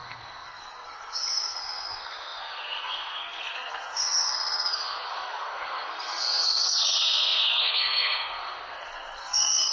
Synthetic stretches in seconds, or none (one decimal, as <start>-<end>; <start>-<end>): 0.0-9.7